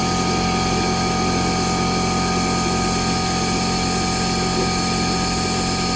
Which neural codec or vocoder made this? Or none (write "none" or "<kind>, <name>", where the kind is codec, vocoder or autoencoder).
none